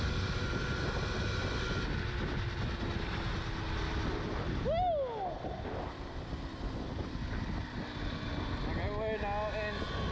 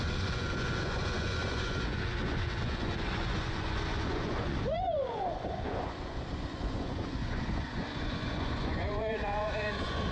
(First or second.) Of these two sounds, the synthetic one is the second